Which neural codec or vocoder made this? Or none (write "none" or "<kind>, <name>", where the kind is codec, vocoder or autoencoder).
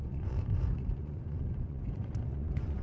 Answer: vocoder, Vocos